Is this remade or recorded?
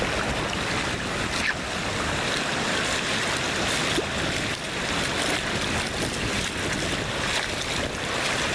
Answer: recorded